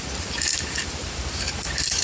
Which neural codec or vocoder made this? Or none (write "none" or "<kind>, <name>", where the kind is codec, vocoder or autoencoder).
vocoder, BigVGAN v2